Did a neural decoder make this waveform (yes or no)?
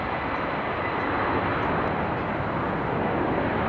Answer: no